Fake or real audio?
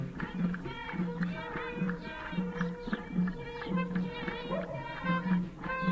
fake